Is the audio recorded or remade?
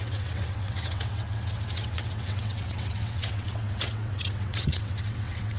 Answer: remade